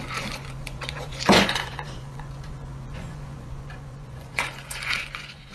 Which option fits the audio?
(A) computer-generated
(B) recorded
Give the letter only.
A